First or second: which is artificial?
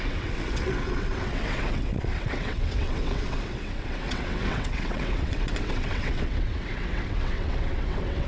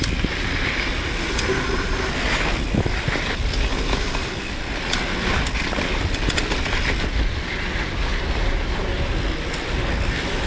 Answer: first